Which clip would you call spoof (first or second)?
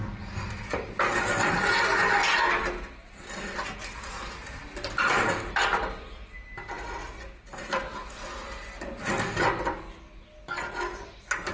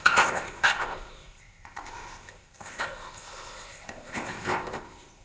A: second